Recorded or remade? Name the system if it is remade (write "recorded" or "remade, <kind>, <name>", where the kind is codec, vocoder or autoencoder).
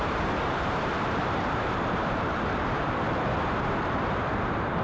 remade, vocoder, BigVGAN v2